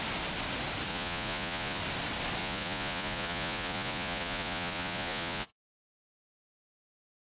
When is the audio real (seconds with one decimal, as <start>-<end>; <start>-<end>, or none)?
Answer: 0.0-0.9; 1.8-2.4; 5.7-7.2

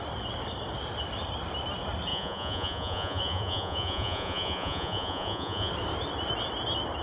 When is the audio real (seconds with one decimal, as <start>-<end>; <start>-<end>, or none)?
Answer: 0.0-2.1; 5.7-7.0